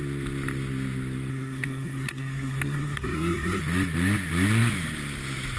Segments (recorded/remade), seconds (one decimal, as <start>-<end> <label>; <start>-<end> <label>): 0.0-1.3 recorded; 1.3-3.6 remade; 3.6-5.6 recorded